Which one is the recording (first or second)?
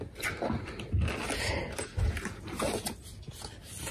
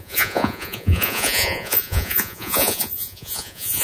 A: first